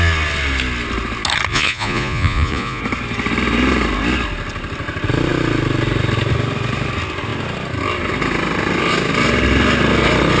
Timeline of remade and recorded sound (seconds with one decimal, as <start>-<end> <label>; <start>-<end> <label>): 0.0-1.5 recorded; 1.5-2.8 remade; 2.8-10.4 recorded

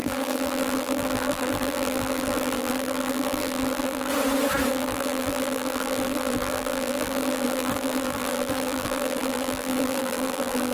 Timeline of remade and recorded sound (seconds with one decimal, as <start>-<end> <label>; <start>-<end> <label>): 0.0-4.1 remade; 4.1-4.7 recorded; 4.7-10.7 remade

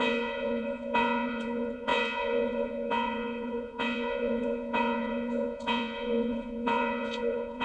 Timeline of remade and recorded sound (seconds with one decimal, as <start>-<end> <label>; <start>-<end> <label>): 0.0-7.6 remade

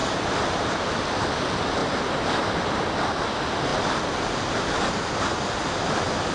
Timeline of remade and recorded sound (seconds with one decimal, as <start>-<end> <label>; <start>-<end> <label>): 0.0-0.9 remade; 0.9-6.3 recorded

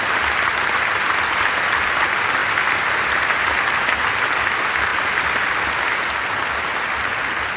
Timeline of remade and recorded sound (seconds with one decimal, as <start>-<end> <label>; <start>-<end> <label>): 0.0-4.9 recorded; 4.9-5.5 remade; 5.5-7.6 recorded